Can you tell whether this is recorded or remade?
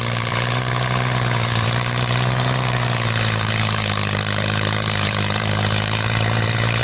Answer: remade